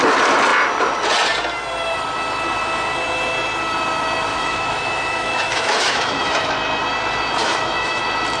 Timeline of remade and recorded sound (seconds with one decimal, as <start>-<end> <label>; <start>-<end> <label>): 0.0-4.3 recorded; 4.3-6.5 remade; 6.5-7.4 recorded; 7.4-8.0 remade; 8.0-8.4 recorded